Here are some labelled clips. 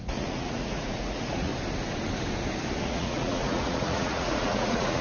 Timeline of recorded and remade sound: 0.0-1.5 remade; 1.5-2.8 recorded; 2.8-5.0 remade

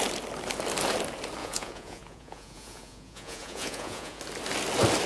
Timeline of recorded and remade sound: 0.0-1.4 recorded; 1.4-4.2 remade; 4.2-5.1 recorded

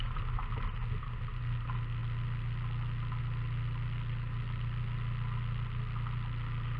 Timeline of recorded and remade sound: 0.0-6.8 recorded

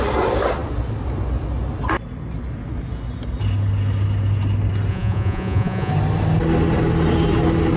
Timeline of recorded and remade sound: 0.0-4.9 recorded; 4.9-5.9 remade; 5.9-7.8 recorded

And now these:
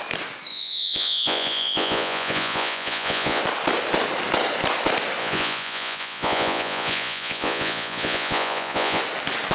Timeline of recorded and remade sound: 0.0-0.5 recorded; 0.5-3.4 remade; 3.4-5.2 recorded; 5.2-9.0 remade; 9.0-9.5 recorded

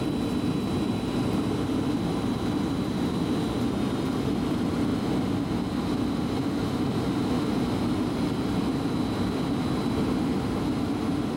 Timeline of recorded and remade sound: 0.0-11.4 recorded